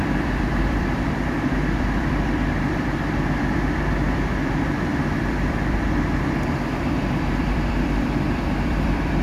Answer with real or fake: fake